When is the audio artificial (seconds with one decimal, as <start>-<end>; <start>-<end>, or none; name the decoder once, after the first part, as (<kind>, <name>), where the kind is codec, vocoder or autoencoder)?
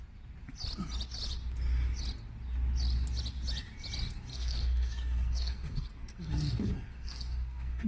4.3-7.9 (codec, SNAC)